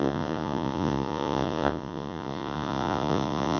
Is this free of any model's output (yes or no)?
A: no